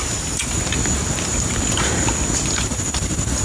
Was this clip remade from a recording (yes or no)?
no